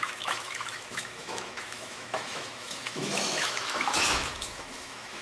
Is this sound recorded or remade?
remade